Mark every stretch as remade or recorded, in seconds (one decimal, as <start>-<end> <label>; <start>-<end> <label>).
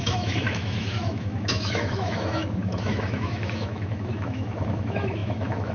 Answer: 0.0-5.7 remade